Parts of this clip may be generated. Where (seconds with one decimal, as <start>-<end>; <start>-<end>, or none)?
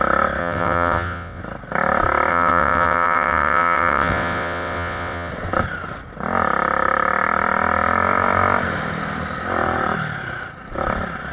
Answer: 0.4-1.4; 2.3-5.3